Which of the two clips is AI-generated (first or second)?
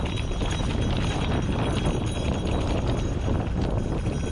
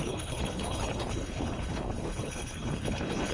second